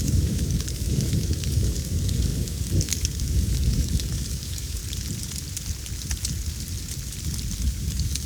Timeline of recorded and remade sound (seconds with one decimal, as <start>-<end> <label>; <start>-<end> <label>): 0.0-4.8 remade; 4.8-7.6 recorded; 7.6-8.3 remade